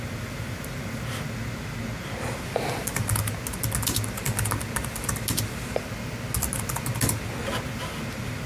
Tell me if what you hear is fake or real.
real